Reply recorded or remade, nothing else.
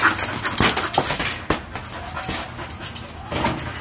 recorded